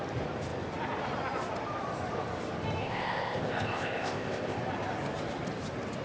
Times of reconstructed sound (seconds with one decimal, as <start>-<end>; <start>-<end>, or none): 2.8-4.6